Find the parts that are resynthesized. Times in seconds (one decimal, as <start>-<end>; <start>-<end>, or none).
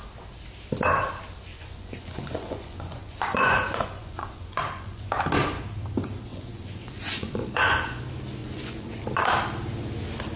1.5-5.1; 6.3-8.0; 8.4-9.0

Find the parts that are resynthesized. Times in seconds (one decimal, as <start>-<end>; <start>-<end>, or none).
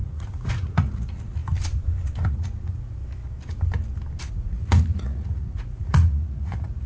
0.0-1.4; 2.3-3.0; 4.3-6.9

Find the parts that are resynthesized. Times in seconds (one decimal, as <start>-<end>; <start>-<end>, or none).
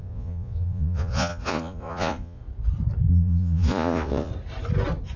0.0-2.4; 3.1-4.3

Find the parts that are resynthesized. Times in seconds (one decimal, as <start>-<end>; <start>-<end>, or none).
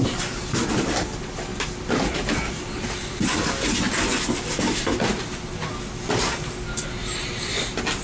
none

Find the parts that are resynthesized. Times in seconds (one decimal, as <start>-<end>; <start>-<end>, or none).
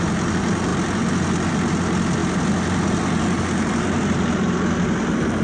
none